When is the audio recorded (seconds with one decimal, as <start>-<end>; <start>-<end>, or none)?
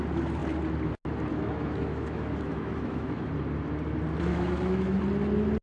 0.0-1.3; 3.3-4.3; 5.0-5.6